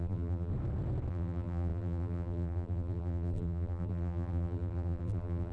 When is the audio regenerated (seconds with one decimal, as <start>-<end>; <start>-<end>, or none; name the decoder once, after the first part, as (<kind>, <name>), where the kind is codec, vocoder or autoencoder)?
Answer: 0.0-0.5 (vocoder, BigVGAN v2); 1.1-5.5